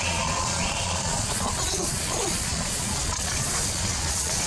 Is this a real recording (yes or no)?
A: no